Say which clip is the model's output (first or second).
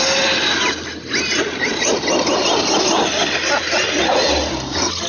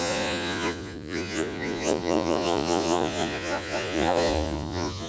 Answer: second